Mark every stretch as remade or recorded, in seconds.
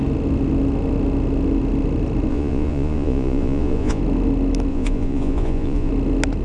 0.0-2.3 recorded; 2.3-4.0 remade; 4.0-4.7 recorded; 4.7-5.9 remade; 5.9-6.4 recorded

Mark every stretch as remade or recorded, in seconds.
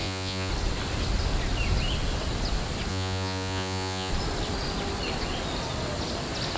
0.0-0.5 remade; 0.5-2.9 recorded; 2.9-4.1 remade; 4.1-6.6 recorded